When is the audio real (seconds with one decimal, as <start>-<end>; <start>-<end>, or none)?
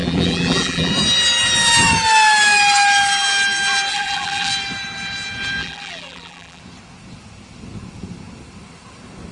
0.9-3.9; 4.5-5.6; 6.6-9.3